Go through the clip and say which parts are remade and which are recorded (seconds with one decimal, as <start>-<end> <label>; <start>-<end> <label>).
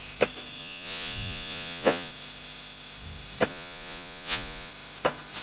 0.0-0.6 recorded; 0.6-2.1 remade; 2.1-3.5 recorded; 3.5-4.7 remade; 4.7-5.4 recorded